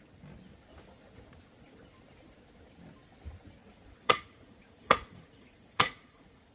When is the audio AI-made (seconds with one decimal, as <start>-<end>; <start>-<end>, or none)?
3.6-6.5

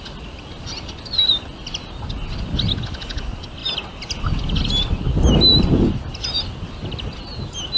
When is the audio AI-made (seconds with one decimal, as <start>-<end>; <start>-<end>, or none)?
none

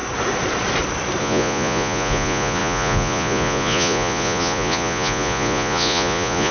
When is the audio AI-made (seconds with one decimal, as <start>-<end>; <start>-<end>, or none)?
1.2-6.5

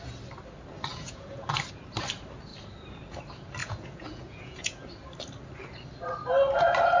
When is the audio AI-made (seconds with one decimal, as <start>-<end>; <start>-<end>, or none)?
0.9-1.5; 3.6-4.9

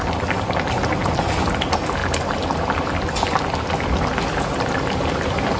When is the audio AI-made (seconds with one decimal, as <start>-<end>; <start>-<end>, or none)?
none

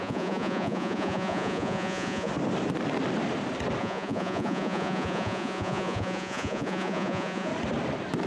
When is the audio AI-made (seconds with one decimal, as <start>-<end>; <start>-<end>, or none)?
0.0-2.3; 3.8-7.5

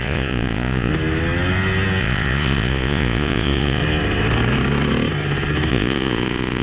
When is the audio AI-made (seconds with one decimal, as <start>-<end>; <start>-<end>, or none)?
0.0-0.9; 2.0-3.8; 5.7-6.6